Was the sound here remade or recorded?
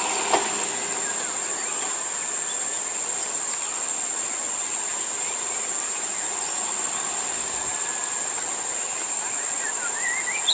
recorded